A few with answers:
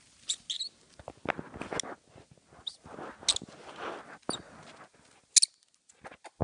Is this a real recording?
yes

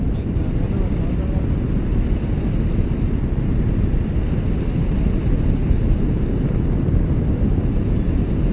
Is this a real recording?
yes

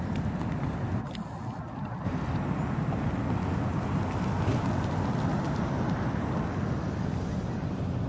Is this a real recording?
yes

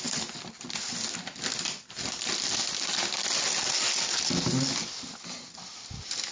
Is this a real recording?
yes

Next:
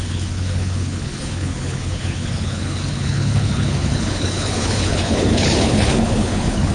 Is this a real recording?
no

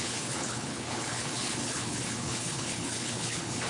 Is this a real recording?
no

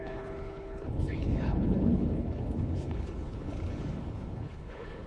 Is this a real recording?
no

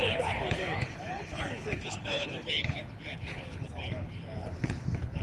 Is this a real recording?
no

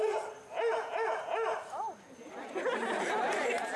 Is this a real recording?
yes